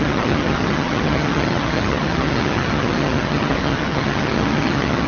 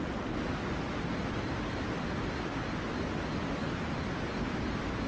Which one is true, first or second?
second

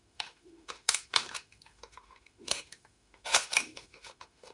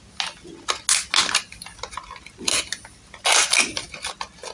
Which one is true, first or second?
second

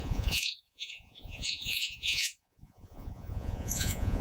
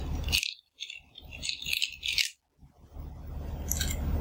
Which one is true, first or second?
second